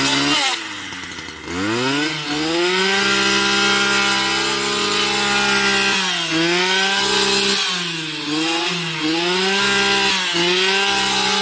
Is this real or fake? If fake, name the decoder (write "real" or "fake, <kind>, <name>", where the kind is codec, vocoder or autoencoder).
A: real